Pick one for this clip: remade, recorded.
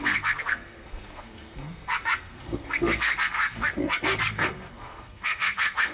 remade